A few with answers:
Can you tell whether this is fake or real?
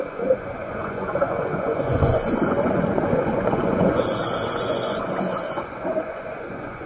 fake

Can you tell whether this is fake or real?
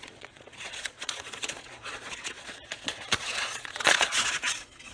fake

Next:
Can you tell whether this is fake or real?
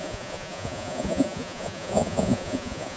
fake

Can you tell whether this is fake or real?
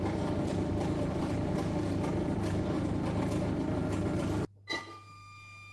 real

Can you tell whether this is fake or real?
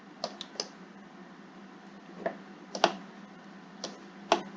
real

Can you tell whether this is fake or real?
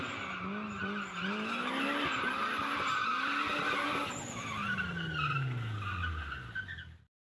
real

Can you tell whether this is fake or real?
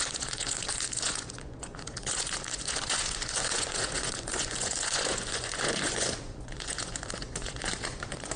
fake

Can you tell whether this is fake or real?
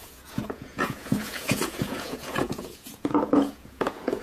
fake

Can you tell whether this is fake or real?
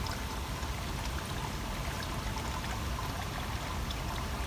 real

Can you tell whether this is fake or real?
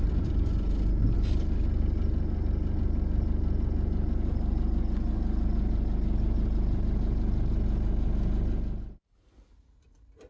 real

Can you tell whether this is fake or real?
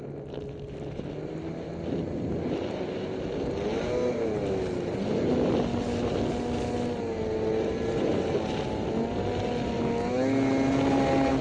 real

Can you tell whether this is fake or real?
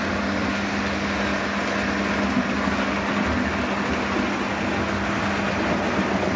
real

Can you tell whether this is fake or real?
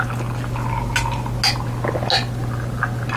real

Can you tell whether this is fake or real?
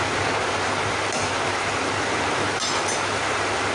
real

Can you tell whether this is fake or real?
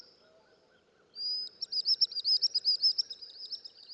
real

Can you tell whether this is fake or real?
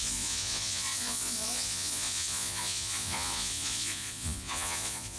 fake